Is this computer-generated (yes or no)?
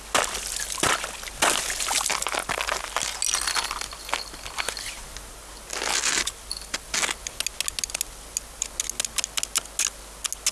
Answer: no